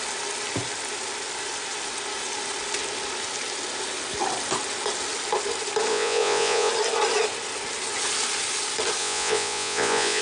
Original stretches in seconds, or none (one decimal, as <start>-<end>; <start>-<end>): 0.0-5.9; 6.7-9.0